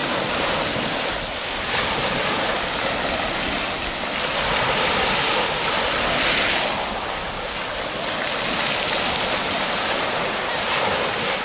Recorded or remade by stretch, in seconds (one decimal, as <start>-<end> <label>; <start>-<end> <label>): 0.0-11.4 recorded

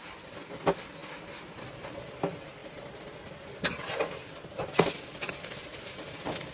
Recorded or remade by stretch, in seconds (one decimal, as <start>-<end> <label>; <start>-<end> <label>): 0.0-6.5 recorded

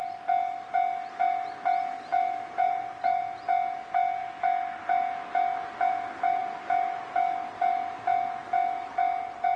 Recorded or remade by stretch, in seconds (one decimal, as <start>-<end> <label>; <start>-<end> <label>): 0.0-2.1 recorded; 2.1-3.2 remade; 3.2-9.6 recorded

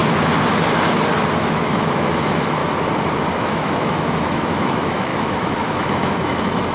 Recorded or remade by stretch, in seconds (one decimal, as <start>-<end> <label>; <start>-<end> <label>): 0.0-1.4 recorded; 1.4-2.6 remade; 2.6-3.3 recorded; 3.3-6.7 remade

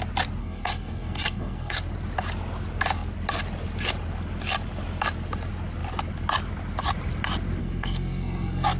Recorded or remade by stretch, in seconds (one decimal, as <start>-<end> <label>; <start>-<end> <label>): 0.0-0.4 recorded; 0.4-1.8 remade; 1.8-7.6 recorded; 7.6-8.8 remade

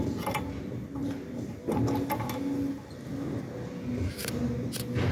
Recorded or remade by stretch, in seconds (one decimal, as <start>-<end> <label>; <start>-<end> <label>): 0.0-1.0 recorded; 1.0-1.6 remade; 1.6-5.1 recorded

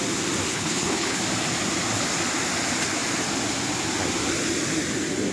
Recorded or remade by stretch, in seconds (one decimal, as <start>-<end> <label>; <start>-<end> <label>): 0.0-0.5 recorded; 0.5-1.2 remade; 1.2-5.3 recorded

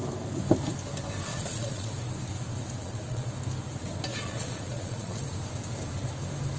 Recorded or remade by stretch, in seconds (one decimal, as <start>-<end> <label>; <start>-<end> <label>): 0.0-1.3 recorded; 1.3-1.9 remade; 1.9-2.8 recorded; 2.8-3.3 remade; 3.3-4.1 recorded; 4.1-5.2 remade; 5.2-6.6 recorded